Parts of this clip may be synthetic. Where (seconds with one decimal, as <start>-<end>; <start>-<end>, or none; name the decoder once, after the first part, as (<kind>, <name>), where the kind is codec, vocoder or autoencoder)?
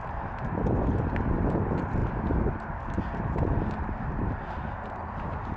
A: 0.0-2.0 (vocoder, BigVGAN v2)